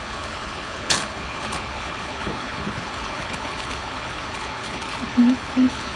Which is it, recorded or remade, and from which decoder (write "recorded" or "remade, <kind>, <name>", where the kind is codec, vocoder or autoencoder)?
remade, codec, HILCodec